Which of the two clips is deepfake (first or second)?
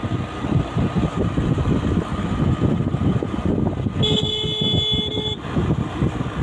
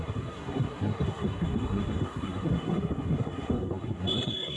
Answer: second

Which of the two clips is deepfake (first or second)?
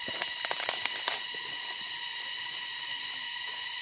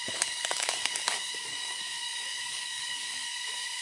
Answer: second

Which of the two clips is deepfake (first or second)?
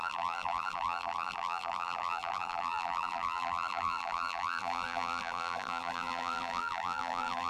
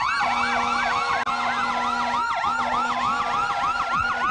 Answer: first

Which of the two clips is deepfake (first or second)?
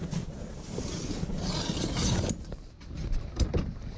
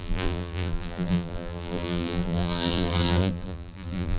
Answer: second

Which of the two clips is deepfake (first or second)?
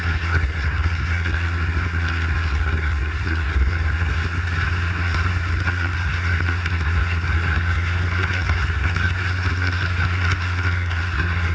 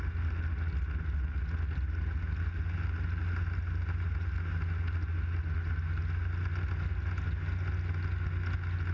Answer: first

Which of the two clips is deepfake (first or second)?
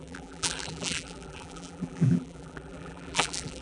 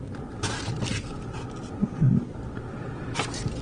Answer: first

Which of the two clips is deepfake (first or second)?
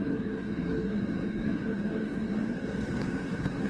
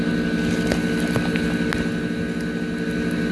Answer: first